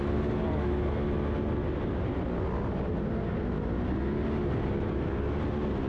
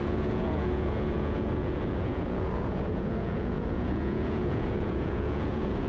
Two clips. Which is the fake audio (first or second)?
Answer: second